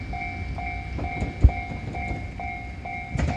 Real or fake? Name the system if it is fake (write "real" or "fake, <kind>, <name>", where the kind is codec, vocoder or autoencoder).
real